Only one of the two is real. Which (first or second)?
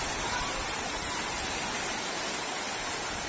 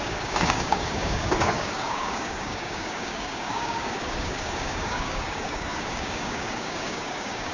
first